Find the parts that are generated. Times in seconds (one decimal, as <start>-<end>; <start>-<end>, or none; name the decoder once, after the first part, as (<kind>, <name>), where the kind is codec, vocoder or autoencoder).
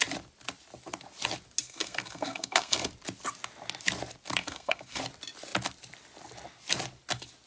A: 1.6-2.9 (codec, SNAC); 4.4-5.0